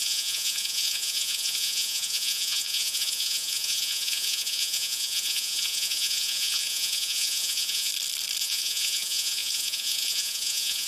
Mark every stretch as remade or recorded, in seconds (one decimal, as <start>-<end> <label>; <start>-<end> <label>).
0.0-7.9 remade; 7.9-8.4 recorded; 8.4-10.9 remade